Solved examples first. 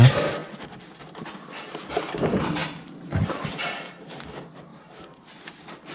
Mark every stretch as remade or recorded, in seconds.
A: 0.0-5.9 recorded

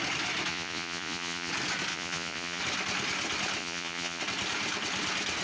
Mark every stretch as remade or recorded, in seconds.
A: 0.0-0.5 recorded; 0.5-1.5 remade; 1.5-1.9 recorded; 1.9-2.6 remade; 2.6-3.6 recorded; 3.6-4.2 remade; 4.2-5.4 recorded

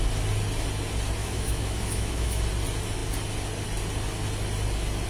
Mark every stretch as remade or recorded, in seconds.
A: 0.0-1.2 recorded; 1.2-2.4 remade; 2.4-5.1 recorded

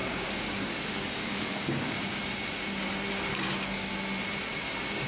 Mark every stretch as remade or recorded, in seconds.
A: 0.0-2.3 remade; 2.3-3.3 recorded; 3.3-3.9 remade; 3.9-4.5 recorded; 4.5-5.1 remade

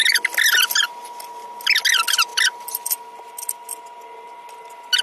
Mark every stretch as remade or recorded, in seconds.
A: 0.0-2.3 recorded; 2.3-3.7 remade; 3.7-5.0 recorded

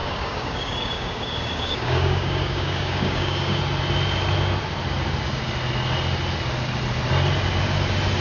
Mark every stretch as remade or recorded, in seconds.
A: 0.0-3.6 remade; 3.6-8.2 recorded